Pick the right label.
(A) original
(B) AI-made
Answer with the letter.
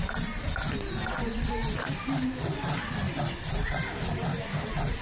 A